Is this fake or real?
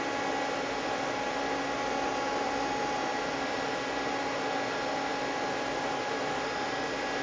real